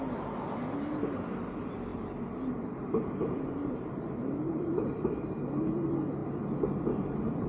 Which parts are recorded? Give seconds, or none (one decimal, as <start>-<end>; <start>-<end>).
0.0-1.9; 5.5-7.5